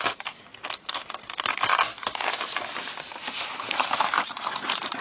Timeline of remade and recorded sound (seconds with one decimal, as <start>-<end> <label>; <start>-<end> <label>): 0.0-5.0 recorded